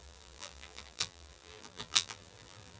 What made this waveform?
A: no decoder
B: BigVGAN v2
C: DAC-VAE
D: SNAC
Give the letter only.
B